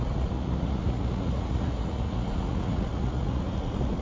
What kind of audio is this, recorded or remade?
remade